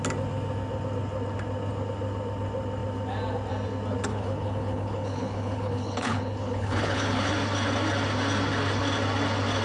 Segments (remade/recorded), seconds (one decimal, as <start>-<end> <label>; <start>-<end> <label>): 0.0-4.1 recorded; 4.1-7.3 remade; 7.3-9.6 recorded